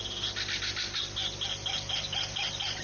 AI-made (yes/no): no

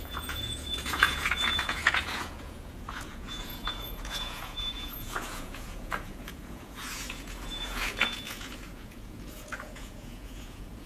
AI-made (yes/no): yes